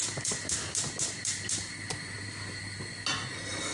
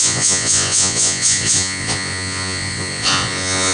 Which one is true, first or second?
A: first